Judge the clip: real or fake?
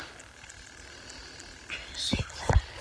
real